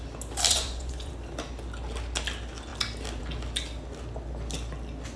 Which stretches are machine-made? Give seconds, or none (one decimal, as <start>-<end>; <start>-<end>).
0.5-1.1